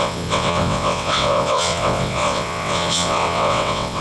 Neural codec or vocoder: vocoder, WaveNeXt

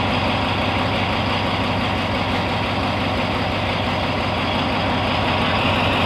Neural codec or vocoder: none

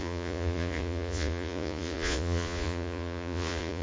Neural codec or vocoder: vocoder, Vocos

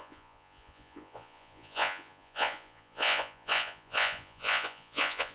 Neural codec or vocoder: vocoder, Vocos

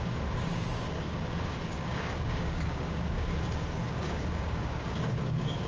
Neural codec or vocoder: codec, DAC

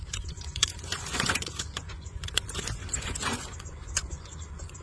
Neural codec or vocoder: vocoder, Vocos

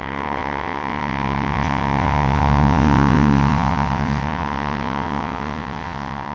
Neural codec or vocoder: vocoder, WaveNeXt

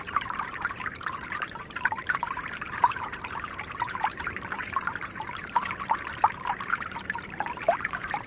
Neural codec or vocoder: vocoder, BigVGAN v2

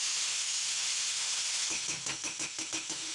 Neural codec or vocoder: autoencoder, DAC-VAE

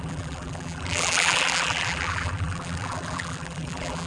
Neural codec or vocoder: vocoder, BigVGAN v2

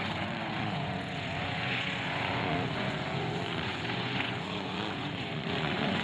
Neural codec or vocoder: vocoder, Vocos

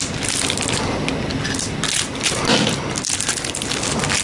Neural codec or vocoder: none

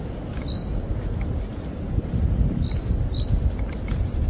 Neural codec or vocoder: none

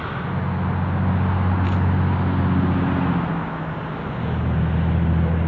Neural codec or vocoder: none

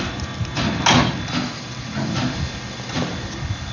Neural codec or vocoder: none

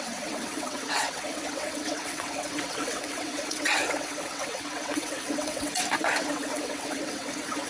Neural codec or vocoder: vocoder, WaveNeXt